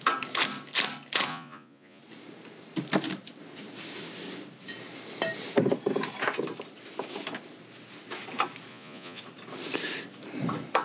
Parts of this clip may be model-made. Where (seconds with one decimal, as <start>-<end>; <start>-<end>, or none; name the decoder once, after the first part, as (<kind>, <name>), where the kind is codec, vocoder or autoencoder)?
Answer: 1.3-2.0 (vocoder, Vocos); 8.7-9.2